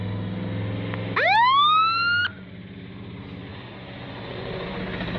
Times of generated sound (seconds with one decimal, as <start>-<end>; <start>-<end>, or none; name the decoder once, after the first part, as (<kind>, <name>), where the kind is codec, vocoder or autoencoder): 3.5-4.8 (vocoder, Vocos)